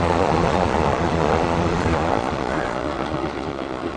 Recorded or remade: remade